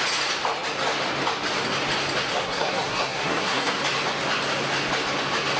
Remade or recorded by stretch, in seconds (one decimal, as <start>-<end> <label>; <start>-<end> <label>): 0.0-2.3 recorded; 2.3-3.8 remade; 3.8-5.6 recorded